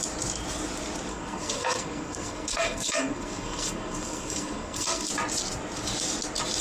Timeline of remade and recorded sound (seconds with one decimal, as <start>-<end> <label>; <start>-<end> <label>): 0.0-1.1 recorded; 1.1-5.1 remade; 5.1-6.6 recorded